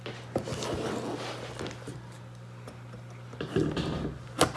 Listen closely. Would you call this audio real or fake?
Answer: real